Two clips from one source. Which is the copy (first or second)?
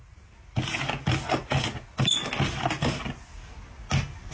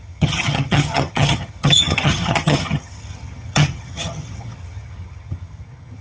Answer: second